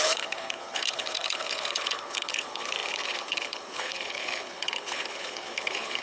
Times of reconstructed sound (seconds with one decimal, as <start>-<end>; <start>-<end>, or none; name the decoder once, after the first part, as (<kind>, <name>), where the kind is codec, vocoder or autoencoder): 0.0-6.0 (codec, HILCodec)